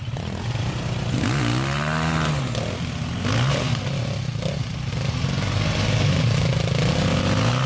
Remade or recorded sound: recorded